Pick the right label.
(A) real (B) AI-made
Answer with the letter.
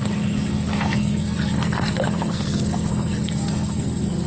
B